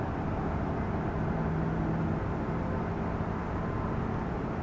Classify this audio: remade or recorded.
recorded